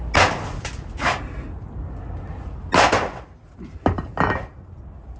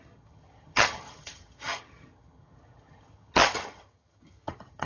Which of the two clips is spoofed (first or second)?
second